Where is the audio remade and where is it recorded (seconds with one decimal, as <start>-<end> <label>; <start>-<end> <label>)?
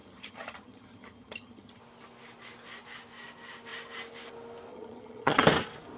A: 0.0-1.8 remade; 1.8-4.7 recorded; 4.7-5.4 remade; 5.4-6.0 recorded